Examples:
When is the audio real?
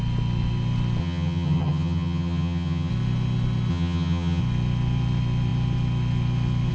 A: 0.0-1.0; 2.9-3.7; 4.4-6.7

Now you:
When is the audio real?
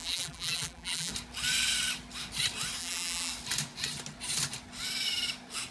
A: 1.1-2.8; 3.3-5.7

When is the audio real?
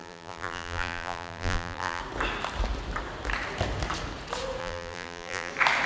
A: 2.0-4.6; 5.5-5.9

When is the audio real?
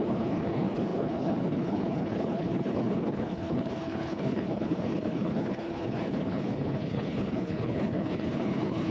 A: none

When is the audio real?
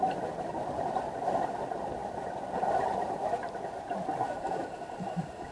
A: 0.0-5.5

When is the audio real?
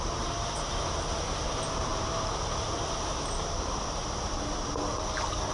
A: 0.0-5.5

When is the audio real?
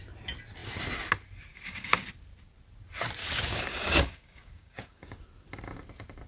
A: 0.0-1.5; 2.0-3.2; 5.2-6.3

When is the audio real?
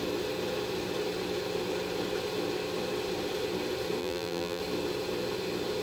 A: 0.0-4.0; 4.6-5.8